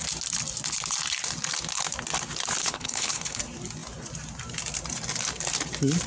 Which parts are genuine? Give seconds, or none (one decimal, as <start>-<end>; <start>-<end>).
0.0-2.6; 3.4-6.1